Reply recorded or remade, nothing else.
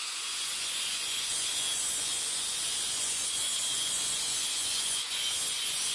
remade